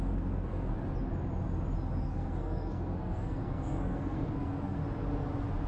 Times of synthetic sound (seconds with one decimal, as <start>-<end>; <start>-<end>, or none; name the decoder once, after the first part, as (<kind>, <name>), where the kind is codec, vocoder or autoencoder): 0.0-0.7 (codec, SNAC); 2.0-4.8